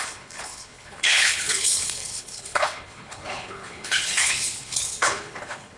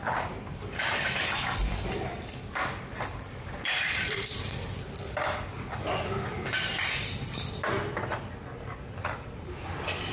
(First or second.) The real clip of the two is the second